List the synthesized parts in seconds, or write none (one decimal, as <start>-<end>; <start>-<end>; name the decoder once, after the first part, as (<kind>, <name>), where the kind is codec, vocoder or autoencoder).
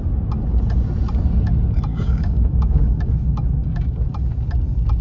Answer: 1.9-3.1 (codec, DAC)